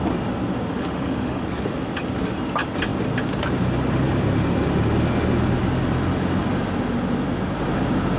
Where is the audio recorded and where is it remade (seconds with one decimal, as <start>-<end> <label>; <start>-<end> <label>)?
0.0-0.7 recorded; 0.7-1.4 remade; 1.4-8.2 recorded